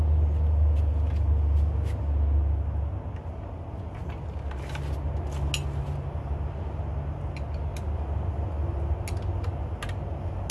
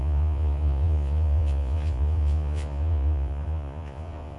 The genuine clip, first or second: first